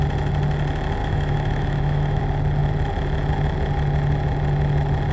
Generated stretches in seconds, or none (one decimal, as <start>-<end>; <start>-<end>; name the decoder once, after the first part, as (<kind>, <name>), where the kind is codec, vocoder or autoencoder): 1.0-2.2 (autoencoder, DAC-VAE)